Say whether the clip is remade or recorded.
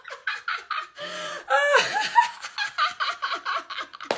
recorded